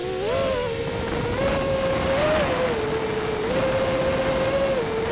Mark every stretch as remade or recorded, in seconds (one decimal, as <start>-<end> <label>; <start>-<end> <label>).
0.0-5.1 recorded